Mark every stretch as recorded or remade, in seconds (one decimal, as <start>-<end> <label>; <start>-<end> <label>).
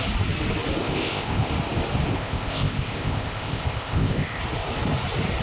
0.0-0.8 recorded; 0.8-1.5 remade; 1.5-2.1 recorded; 2.1-4.4 remade; 4.4-5.4 recorded